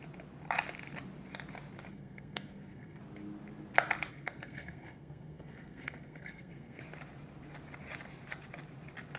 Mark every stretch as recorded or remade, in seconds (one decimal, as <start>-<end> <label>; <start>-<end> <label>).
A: 0.0-1.9 recorded; 1.9-3.0 remade; 3.0-4.1 recorded; 4.1-6.8 remade; 6.8-9.2 recorded